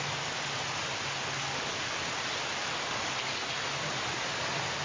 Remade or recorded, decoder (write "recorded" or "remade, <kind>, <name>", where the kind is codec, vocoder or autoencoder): recorded